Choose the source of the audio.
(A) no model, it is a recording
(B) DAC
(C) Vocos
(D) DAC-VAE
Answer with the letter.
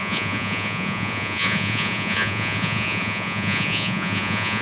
C